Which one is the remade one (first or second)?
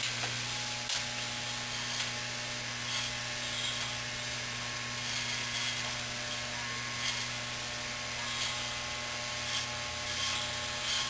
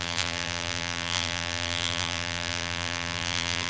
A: second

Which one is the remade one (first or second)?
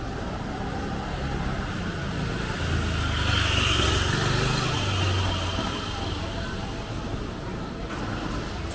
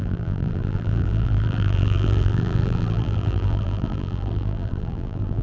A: second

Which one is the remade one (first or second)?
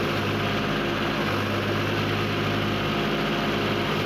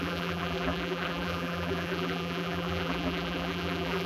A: second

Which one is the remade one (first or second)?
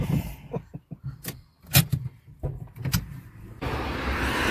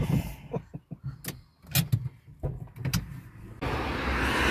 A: first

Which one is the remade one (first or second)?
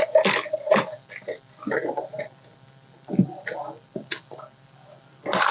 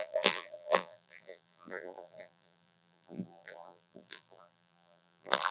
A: second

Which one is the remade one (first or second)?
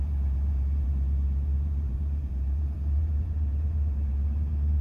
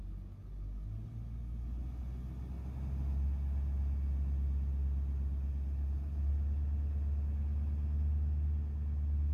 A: first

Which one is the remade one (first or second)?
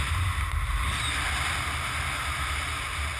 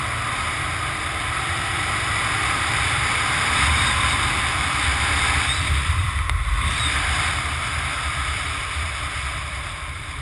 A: second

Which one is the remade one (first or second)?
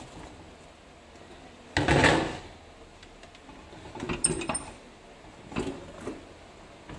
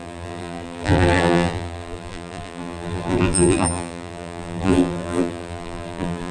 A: second